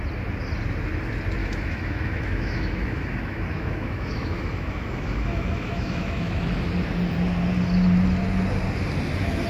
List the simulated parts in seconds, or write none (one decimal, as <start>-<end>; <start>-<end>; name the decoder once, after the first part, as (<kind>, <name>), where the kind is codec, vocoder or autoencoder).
1.4-6.4 (autoencoder, DAC-VAE)